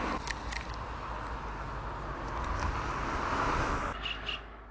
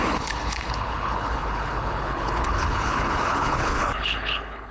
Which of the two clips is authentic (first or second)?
first